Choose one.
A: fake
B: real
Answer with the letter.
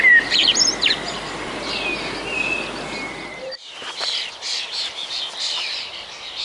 B